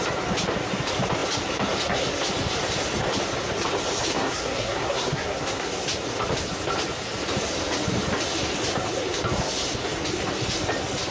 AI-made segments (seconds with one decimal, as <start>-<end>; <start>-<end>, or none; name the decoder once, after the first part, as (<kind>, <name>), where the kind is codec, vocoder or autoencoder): 4.1-5.7 (codec, SNAC)